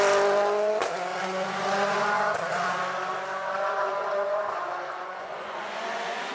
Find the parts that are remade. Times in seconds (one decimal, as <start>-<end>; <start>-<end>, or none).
1.1-2.8; 3.4-6.3

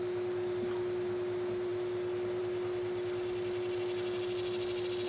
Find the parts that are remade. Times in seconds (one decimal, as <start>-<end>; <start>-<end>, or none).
none